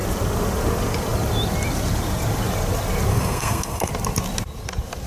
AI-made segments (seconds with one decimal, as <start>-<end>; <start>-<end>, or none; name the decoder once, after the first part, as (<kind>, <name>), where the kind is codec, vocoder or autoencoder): 3.1-3.9 (codec, SNAC)